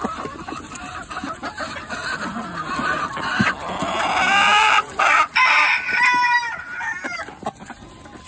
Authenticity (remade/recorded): recorded